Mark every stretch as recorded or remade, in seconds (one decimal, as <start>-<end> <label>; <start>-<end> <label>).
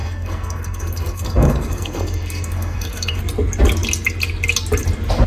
0.0-3.2 remade; 3.2-5.3 recorded